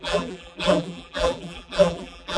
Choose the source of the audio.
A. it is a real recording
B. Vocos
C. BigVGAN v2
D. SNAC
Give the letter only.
C